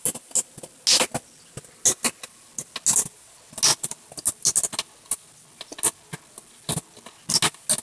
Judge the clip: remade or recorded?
recorded